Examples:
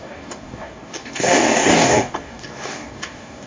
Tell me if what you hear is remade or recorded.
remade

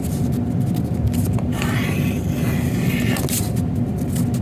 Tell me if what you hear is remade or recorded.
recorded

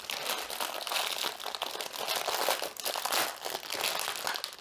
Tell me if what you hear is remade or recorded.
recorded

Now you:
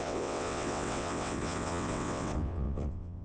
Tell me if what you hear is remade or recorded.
remade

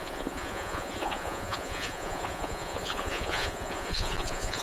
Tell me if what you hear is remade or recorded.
remade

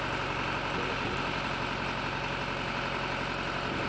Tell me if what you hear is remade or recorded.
recorded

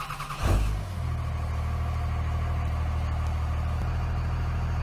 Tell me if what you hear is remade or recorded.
recorded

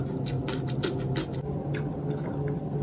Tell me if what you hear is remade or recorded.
recorded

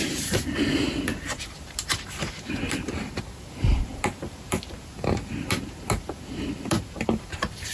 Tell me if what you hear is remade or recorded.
remade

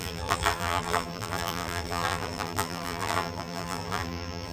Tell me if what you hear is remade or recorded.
remade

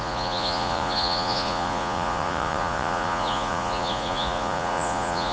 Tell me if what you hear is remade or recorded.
remade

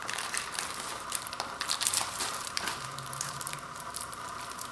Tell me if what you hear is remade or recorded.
remade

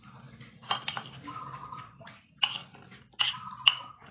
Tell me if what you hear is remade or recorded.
recorded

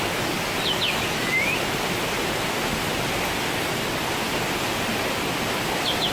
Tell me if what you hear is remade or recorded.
recorded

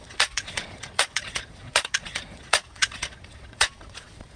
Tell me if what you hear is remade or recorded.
remade